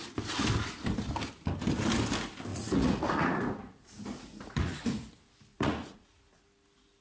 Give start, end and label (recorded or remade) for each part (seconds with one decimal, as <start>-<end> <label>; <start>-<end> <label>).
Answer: 0.0-2.5 recorded; 2.5-3.4 remade; 3.4-3.8 recorded; 3.8-5.1 remade; 5.1-5.5 recorded; 5.5-6.4 remade; 6.4-7.0 recorded